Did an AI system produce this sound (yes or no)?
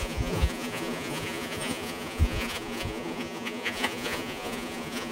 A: yes